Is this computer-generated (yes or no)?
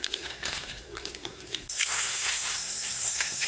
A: yes